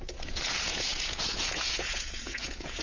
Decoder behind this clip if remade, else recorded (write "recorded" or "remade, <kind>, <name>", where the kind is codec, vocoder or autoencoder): remade, vocoder, Vocos